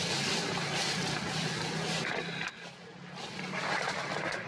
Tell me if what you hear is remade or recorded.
recorded